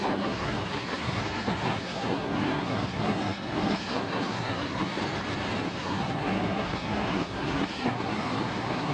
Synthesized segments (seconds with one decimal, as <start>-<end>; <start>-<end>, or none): 0.0-5.0; 5.6-8.9